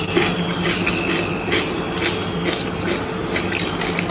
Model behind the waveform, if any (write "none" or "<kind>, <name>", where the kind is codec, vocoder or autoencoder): none